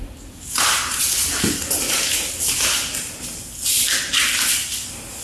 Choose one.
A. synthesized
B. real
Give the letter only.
B